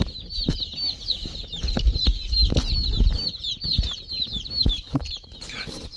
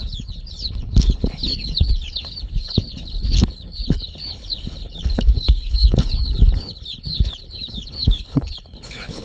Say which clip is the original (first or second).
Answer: first